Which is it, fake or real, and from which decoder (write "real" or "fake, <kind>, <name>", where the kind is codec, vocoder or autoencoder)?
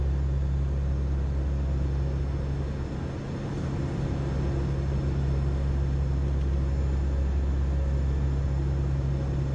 real